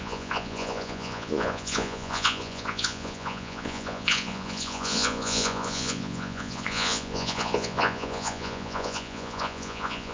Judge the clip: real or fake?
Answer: fake